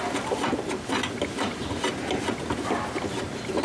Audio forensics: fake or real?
real